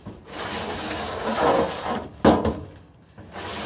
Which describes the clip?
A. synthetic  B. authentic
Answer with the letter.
B